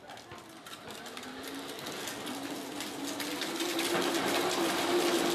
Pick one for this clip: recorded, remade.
recorded